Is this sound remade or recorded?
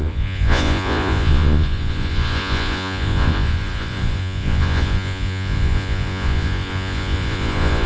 remade